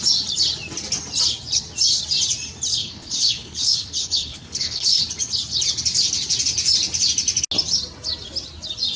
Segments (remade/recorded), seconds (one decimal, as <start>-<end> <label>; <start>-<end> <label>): 0.0-2.8 recorded; 2.8-5.0 remade; 5.0-9.0 recorded